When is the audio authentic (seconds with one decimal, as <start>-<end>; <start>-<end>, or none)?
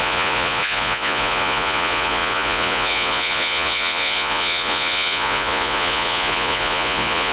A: none